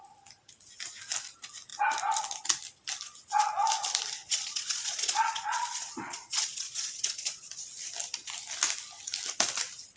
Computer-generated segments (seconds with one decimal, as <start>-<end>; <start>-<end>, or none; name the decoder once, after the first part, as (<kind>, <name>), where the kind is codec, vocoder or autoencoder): 4.2-7.5 (vocoder, Vocos)